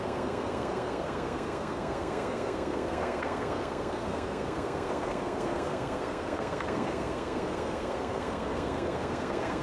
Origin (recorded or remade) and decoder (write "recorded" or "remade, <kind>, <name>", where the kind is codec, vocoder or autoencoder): remade, codec, SNAC